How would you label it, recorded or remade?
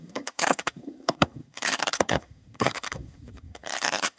remade